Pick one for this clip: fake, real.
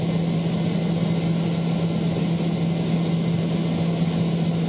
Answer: real